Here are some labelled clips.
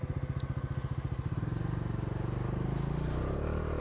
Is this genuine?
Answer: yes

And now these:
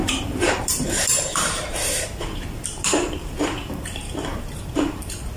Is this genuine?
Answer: no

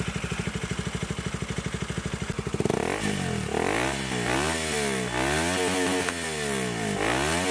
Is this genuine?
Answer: yes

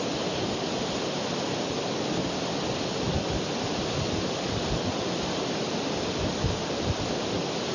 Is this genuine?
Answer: yes